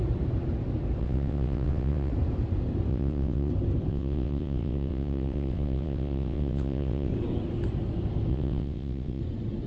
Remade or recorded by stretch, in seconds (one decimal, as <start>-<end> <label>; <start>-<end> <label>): 0.0-1.0 recorded; 1.0-2.1 remade; 2.1-2.9 recorded; 2.9-3.5 remade; 3.5-3.9 recorded; 3.9-7.1 remade; 7.1-8.3 recorded; 8.3-9.2 remade; 9.2-9.7 recorded